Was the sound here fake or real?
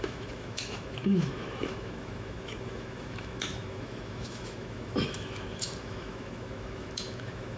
fake